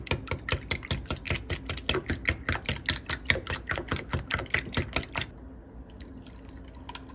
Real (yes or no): yes